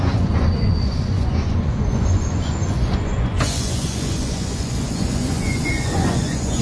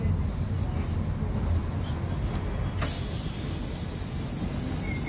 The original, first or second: second